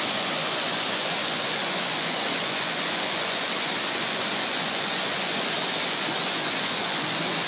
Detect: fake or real fake